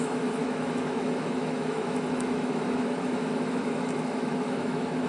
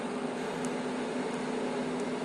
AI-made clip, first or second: first